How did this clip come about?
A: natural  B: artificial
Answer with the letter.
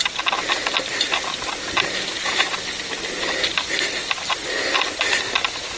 A